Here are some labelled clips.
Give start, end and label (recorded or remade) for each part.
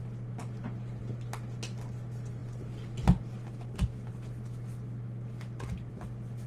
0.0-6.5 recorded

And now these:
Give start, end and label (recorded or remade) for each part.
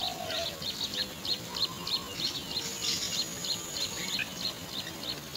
0.0-5.4 recorded